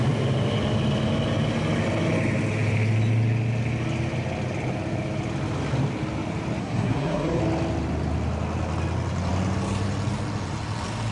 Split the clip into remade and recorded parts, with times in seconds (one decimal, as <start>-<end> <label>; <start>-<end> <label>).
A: 0.0-6.6 recorded; 6.6-7.4 remade; 7.4-11.1 recorded